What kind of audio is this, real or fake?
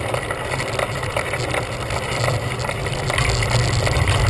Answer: real